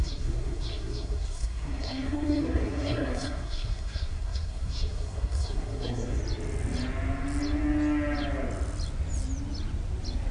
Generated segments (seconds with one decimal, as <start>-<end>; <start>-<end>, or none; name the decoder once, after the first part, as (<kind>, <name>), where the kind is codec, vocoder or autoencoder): 0.0-6.2 (codec, SNAC)